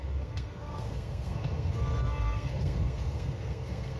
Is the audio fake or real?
fake